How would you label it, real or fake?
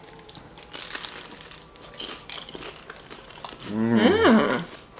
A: real